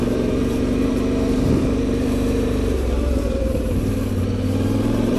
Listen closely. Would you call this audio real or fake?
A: fake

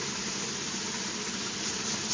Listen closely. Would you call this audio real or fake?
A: real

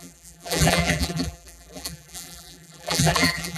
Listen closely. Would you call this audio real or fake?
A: fake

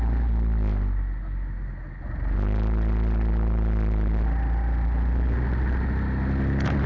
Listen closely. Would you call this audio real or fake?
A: real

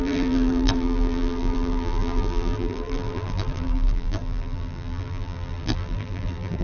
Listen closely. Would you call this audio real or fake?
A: fake